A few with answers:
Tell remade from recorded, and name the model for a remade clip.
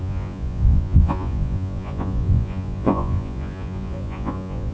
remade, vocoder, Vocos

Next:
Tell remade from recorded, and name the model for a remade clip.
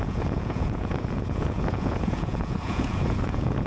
remade, vocoder, Vocos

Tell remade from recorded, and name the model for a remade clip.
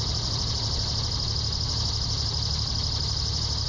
recorded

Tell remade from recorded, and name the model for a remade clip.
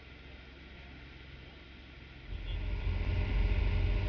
recorded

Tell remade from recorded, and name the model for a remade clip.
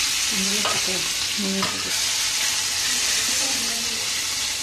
recorded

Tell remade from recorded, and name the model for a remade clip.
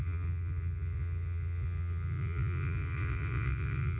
remade, vocoder, Vocos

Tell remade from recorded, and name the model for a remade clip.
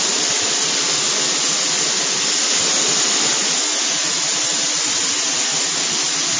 recorded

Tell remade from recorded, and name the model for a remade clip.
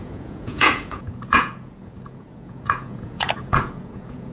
remade, vocoder, Vocos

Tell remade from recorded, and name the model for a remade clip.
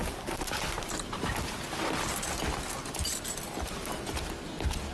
recorded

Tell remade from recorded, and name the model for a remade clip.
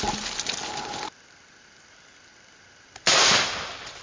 recorded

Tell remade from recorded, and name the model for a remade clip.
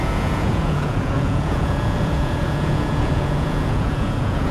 remade, vocoder, Vocos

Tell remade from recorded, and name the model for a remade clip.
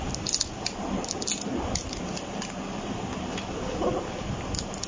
recorded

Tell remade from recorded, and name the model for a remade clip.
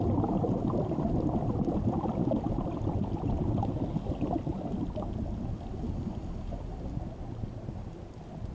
recorded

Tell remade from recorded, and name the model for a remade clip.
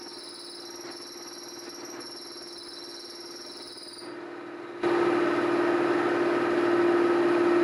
recorded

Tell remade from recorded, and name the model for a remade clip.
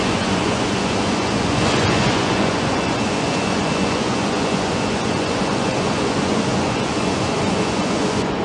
remade, vocoder, Vocos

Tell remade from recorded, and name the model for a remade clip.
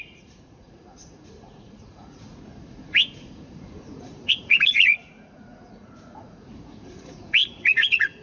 remade, vocoder, Vocos